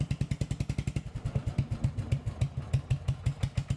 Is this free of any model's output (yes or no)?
yes